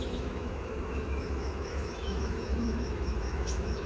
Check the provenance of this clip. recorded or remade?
remade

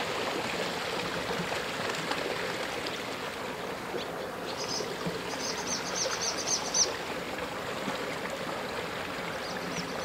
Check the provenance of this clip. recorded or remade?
recorded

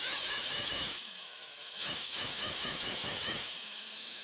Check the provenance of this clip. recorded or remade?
remade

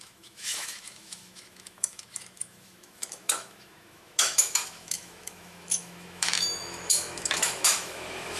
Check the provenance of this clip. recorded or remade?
remade